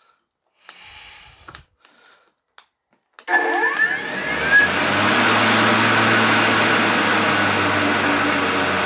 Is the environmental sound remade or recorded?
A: recorded